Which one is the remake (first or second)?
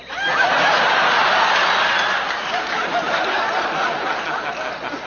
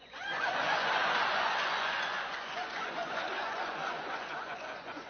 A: second